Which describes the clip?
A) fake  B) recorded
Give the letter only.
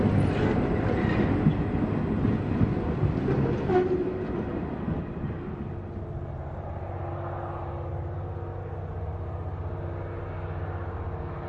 B